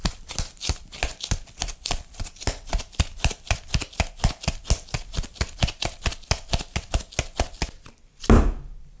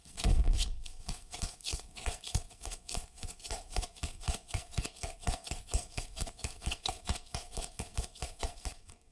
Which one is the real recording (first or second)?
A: first